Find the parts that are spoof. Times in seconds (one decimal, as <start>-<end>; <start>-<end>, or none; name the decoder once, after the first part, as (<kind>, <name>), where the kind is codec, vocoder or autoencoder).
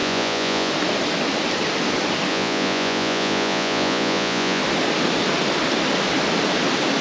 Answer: 0.0-0.7 (vocoder, Vocos); 2.3-4.6